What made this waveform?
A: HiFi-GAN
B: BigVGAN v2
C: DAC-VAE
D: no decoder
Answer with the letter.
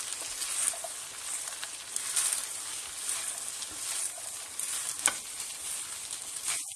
D